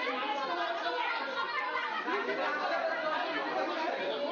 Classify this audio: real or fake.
real